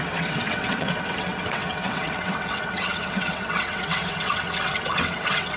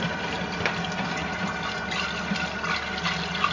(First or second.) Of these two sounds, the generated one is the first